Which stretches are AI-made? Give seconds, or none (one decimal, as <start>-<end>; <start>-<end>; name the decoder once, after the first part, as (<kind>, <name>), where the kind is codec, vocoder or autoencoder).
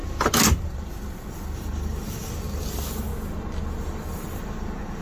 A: 1.3-3.1 (vocoder, BigVGAN v2); 3.7-5.0